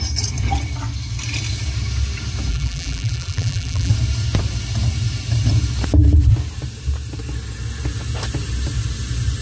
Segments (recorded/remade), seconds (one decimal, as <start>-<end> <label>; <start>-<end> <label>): 0.0-2.5 recorded; 2.5-3.9 remade; 3.9-9.4 recorded

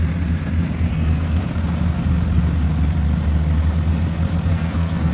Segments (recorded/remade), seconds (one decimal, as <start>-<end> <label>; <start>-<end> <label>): 0.0-0.9 recorded; 0.9-1.4 remade; 1.4-4.5 recorded; 4.5-5.1 remade

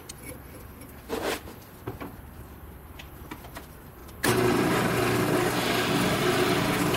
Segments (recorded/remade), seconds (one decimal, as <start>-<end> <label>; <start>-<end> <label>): 0.0-2.1 recorded; 2.1-2.9 remade; 2.9-4.0 recorded; 4.0-4.8 remade; 4.8-7.0 recorded